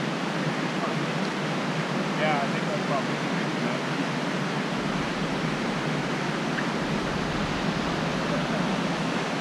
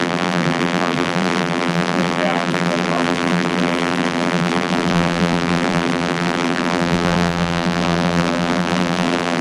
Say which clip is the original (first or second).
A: first